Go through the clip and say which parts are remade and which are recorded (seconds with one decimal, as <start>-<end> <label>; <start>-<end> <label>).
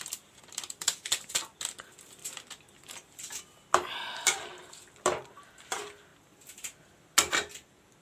0.0-8.0 recorded